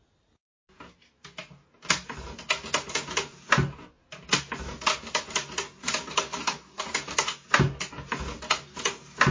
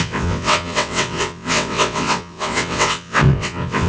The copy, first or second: second